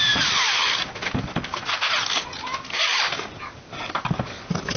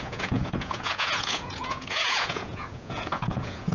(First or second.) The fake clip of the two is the second